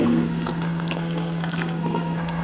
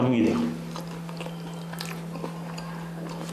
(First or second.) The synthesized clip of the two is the first